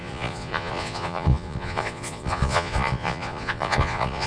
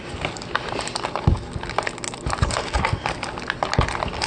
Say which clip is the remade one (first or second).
first